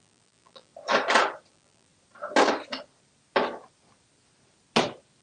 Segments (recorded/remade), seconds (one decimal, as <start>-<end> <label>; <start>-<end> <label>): 0.0-0.7 remade; 0.7-1.5 recorded; 1.5-1.9 remade; 1.9-5.2 recorded

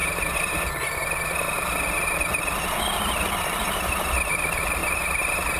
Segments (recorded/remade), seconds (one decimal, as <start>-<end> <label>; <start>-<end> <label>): 0.0-3.4 recorded; 3.4-5.6 remade

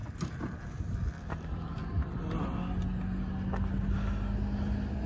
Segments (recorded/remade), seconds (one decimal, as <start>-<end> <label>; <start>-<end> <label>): 0.0-1.7 remade; 1.7-5.1 recorded